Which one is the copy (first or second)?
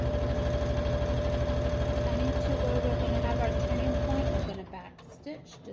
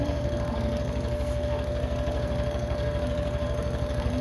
second